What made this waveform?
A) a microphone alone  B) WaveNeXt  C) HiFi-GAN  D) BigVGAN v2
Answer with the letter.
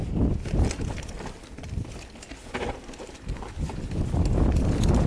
D